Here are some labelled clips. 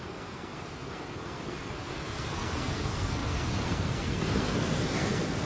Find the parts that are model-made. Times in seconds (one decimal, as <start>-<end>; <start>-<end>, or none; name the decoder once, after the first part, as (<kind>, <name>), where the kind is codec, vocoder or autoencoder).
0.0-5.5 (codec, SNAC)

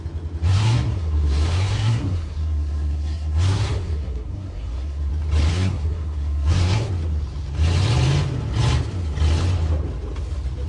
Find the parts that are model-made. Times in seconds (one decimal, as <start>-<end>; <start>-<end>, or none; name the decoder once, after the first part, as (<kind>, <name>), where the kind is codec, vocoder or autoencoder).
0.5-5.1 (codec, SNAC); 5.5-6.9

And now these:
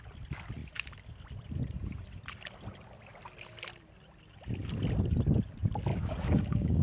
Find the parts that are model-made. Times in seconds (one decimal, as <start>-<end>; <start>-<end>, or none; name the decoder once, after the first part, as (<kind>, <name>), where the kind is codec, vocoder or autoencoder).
5.9-6.8 (codec, DAC)

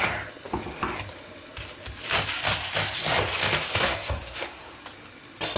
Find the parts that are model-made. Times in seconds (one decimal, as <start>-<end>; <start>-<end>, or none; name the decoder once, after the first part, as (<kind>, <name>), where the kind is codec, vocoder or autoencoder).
3.7-4.7 (codec, SNAC)

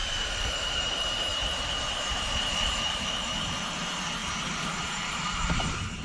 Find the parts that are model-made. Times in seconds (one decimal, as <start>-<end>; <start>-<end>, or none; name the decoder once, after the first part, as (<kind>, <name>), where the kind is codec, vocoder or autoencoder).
0.0-6.0 (vocoder, BigVGAN v2)

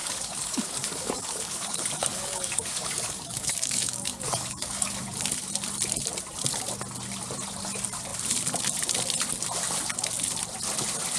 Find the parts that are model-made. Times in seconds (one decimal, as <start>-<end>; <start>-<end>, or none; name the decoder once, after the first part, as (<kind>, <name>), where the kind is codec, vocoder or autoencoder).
0.0-5.0 (codec, DAC)